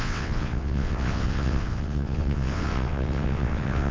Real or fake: fake